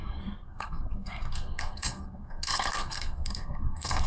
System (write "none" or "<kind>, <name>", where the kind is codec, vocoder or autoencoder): codec, SNAC